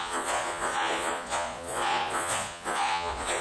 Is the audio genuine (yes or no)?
no